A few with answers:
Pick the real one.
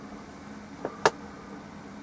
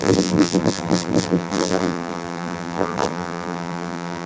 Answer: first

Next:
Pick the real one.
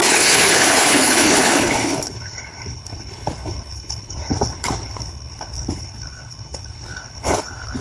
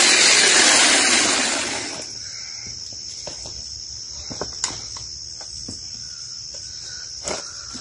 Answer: second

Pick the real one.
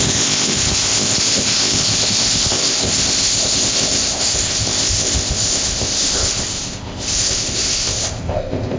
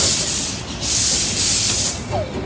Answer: second